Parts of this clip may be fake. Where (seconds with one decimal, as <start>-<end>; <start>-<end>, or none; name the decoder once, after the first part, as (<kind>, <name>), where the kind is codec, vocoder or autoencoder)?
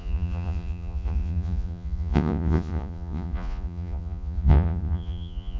0.0-5.6 (vocoder, Vocos)